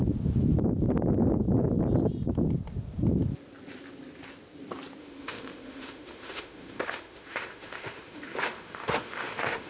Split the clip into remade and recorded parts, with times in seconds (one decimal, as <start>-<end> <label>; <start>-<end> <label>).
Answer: 0.0-5.0 recorded; 5.0-9.7 remade

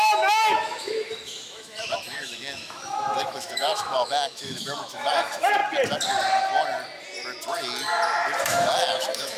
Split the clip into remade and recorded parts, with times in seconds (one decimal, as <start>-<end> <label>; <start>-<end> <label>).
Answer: 0.0-5.6 remade; 5.6-8.4 recorded; 8.4-9.4 remade

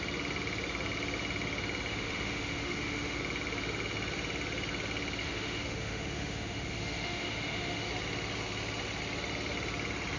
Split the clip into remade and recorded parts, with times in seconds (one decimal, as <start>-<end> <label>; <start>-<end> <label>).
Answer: 0.0-1.9 recorded; 1.9-3.2 remade; 3.2-5.2 recorded; 5.2-7.9 remade; 7.9-10.2 recorded

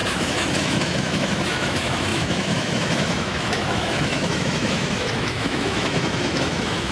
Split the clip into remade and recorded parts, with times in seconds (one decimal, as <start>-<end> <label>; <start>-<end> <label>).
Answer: 0.0-6.9 remade

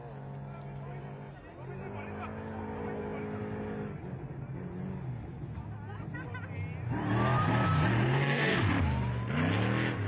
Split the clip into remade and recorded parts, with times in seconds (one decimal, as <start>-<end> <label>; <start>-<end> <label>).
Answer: 0.0-7.9 recorded; 7.9-8.8 remade; 8.8-10.1 recorded

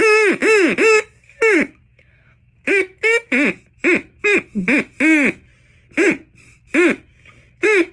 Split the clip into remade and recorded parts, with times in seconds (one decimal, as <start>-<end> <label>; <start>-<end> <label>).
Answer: 0.0-0.4 remade; 0.4-1.0 recorded; 1.0-5.5 remade; 5.5-6.5 recorded; 6.5-7.9 remade